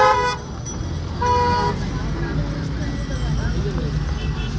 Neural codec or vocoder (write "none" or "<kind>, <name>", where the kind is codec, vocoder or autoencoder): none